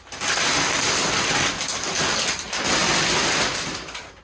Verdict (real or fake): real